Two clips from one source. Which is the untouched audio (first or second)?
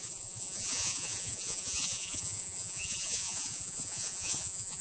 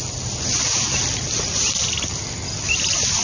second